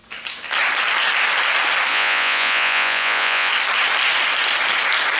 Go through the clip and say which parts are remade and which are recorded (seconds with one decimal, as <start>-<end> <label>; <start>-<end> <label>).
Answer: 0.0-1.9 recorded; 1.9-3.5 remade; 3.5-5.2 recorded